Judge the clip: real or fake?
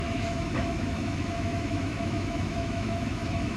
fake